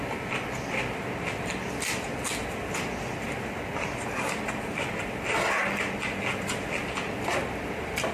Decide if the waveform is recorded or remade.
recorded